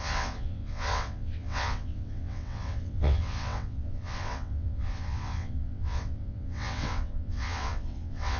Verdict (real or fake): fake